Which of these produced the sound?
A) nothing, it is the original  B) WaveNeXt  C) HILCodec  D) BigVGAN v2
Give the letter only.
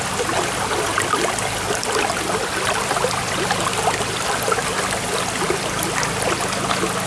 A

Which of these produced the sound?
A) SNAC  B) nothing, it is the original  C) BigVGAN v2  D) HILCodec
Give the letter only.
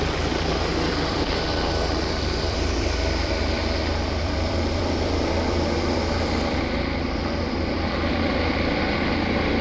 C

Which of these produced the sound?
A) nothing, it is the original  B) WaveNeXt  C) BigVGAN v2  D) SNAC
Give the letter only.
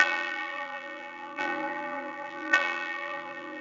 C